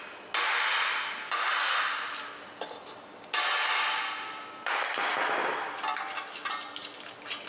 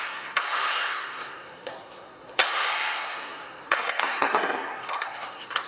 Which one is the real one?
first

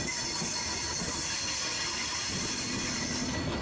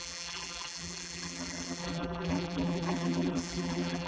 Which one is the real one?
first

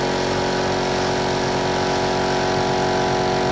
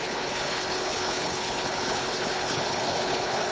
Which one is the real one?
first